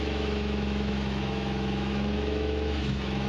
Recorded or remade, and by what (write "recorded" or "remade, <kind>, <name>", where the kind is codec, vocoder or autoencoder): remade, autoencoder, DAC-VAE